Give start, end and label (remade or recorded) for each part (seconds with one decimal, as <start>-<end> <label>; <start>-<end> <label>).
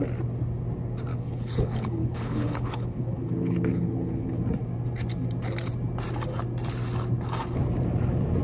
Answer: 0.0-1.1 recorded; 1.1-4.4 remade; 4.4-8.4 recorded